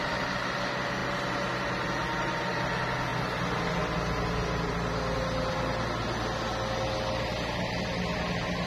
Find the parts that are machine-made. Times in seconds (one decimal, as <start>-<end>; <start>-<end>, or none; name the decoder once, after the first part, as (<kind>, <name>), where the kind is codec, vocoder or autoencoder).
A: none